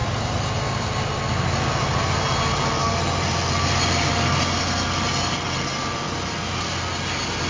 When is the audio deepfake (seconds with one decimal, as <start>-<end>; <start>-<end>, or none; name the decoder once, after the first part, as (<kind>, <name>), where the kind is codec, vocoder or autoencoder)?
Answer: 0.0-1.1 (vocoder, BigVGAN v2)